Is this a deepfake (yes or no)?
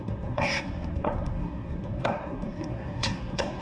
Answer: yes